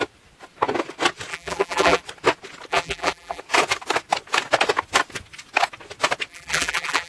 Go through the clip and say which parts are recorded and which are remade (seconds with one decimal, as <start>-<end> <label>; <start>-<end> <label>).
0.0-1.3 recorded; 1.3-2.0 remade; 2.0-2.7 recorded; 2.7-3.4 remade; 3.4-6.3 recorded; 6.3-7.1 remade

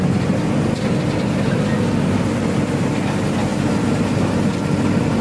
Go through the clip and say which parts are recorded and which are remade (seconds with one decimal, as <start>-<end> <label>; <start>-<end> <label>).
0.0-5.2 recorded